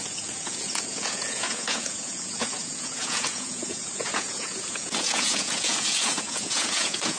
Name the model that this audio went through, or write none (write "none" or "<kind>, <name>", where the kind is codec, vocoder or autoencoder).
vocoder, Vocos